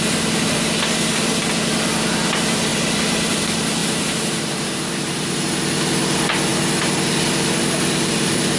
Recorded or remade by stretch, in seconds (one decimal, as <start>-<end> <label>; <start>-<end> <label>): 0.0-2.7 recorded; 2.7-3.4 remade; 3.4-3.8 recorded; 3.8-5.4 remade; 5.4-8.6 recorded

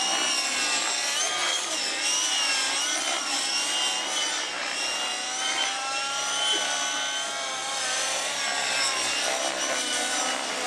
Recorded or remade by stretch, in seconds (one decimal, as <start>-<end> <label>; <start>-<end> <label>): 0.0-1.4 recorded; 1.4-2.5 remade; 2.5-7.6 recorded; 7.6-8.4 remade; 8.4-10.7 recorded